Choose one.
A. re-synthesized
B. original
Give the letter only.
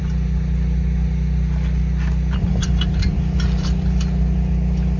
B